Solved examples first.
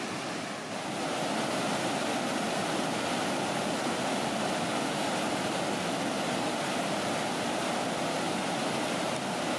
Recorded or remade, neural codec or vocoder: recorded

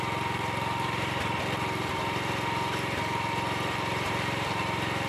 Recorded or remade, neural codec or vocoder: remade, vocoder, BigVGAN v2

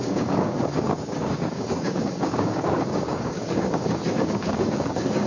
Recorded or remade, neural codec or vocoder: remade, codec, DAC